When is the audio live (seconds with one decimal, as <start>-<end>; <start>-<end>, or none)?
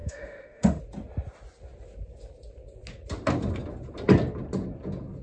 0.8-5.2